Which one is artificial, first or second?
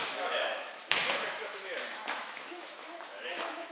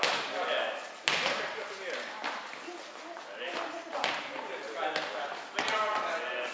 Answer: first